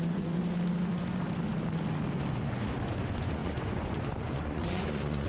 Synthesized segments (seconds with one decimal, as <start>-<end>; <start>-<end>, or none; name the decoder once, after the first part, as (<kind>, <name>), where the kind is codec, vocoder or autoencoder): 0.0-0.4 (vocoder, Vocos); 2.3-5.3